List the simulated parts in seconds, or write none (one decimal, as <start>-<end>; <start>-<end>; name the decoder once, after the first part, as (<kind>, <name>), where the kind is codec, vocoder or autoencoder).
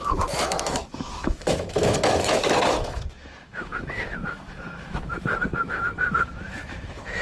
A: 0.0-7.2 (autoencoder, DAC-VAE)